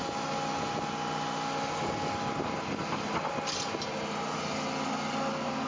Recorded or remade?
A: recorded